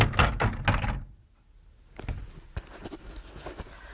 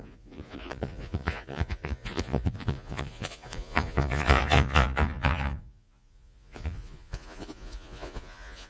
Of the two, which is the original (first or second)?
first